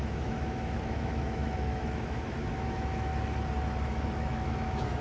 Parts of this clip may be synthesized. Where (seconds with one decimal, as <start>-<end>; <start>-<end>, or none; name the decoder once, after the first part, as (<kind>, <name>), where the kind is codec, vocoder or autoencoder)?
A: 0.0-3.1 (autoencoder, DAC-VAE); 3.8-5.0